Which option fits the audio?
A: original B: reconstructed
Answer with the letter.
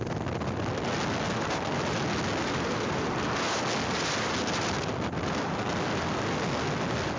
A